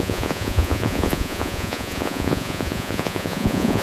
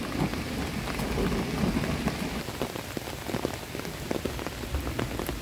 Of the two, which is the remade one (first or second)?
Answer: first